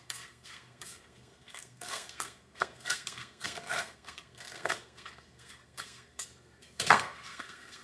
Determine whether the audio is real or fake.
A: fake